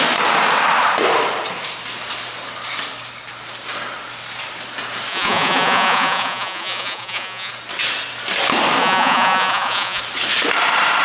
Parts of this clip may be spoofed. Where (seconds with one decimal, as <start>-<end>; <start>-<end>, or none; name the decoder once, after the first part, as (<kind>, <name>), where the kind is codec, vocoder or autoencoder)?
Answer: 5.1-7.5 (vocoder, Vocos); 8.8-10.0